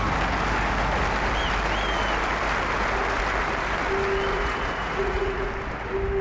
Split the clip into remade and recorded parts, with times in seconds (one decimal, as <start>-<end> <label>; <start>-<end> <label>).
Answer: 0.0-4.3 recorded; 4.3-5.5 remade; 5.5-6.2 recorded